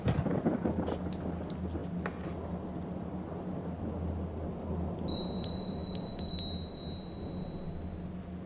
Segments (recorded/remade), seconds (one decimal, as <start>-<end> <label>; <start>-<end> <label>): 0.0-8.5 recorded